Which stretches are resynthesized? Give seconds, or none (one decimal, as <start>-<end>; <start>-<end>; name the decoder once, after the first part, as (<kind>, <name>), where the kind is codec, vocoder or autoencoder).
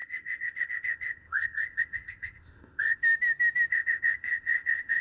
0.0-3.0 (codec, ZipCodec); 3.7-5.0